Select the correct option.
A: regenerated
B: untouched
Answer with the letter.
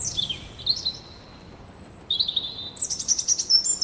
B